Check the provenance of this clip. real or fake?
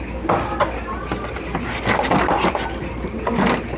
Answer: real